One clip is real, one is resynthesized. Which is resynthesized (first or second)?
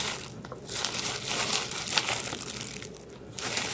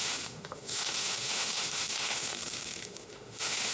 second